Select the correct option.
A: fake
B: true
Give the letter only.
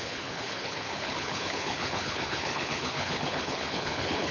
A